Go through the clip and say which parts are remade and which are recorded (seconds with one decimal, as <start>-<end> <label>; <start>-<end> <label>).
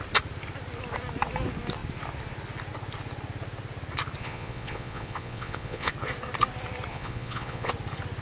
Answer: 0.0-4.2 recorded; 4.2-5.9 remade; 5.9-6.9 recorded; 6.9-7.7 remade; 7.7-8.2 recorded